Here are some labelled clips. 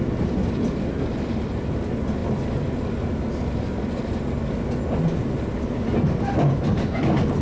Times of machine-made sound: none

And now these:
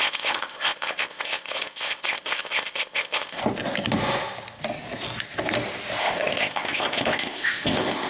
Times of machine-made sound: 0.0-3.4 (codec, ZipCodec); 6.0-8.1

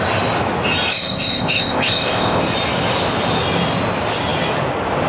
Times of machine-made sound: 0.9-2.4 (codec, ZipCodec)